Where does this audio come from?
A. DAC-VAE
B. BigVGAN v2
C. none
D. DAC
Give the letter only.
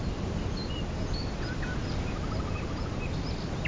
C